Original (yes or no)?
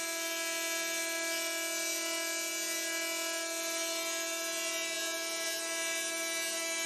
yes